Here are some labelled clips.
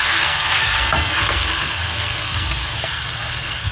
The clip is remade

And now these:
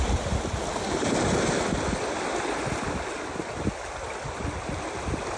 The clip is recorded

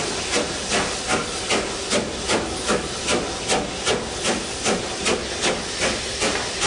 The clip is recorded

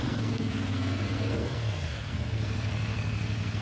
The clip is remade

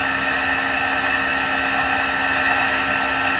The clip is recorded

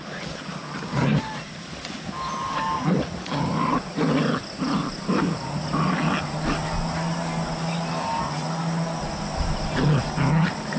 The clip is recorded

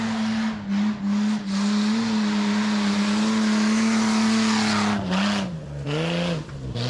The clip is recorded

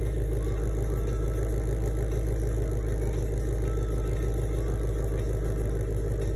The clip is recorded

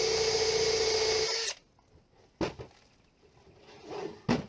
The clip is recorded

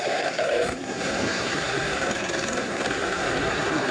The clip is remade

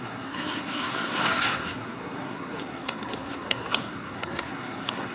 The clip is remade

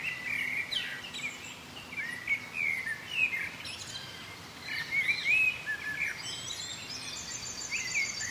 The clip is recorded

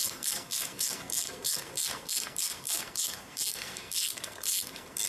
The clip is remade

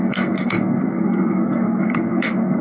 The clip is remade